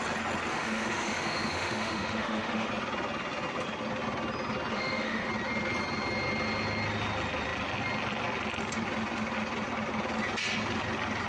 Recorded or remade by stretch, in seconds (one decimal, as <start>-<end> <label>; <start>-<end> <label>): 0.0-0.5 recorded; 0.5-2.7 remade; 2.7-4.7 recorded; 4.7-5.3 remade; 5.3-11.3 recorded